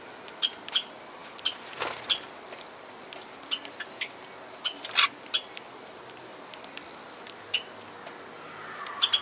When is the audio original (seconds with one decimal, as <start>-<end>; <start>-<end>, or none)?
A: 0.0-9.2